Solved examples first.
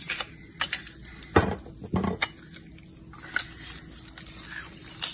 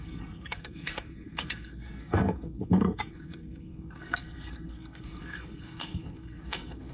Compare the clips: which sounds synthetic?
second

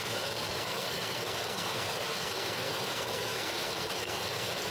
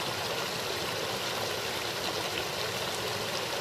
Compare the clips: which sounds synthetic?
first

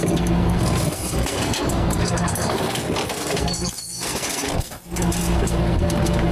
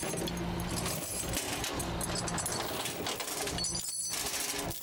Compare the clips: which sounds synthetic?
first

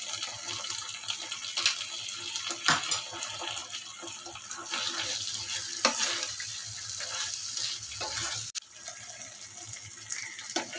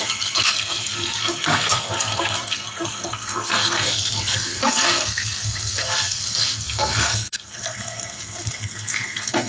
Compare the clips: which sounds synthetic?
second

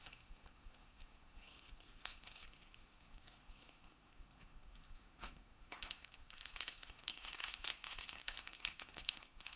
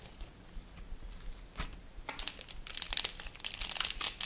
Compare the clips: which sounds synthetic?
first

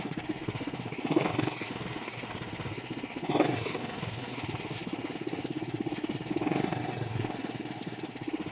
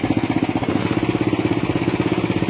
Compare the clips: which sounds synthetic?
first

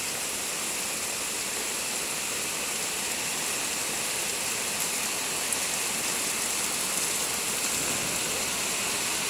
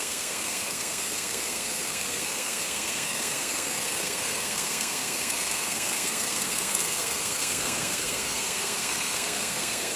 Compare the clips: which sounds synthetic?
second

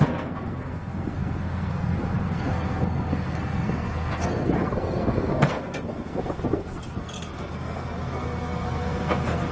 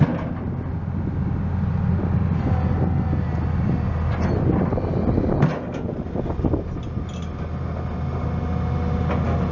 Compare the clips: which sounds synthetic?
first